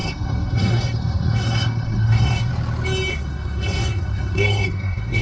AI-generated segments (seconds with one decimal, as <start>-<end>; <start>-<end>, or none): 0.0-2.5; 3.1-5.2